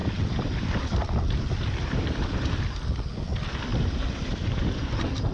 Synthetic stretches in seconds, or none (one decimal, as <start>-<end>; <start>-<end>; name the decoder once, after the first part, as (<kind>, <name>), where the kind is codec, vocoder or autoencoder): 0.0-3.2 (vocoder, BigVGAN v2); 3.7-5.3